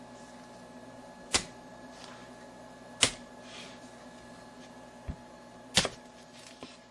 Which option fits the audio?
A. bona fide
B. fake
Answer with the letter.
A